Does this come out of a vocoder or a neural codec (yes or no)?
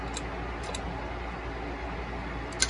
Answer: no